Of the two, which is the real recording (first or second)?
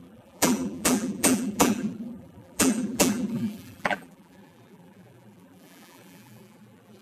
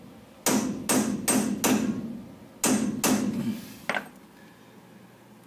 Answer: second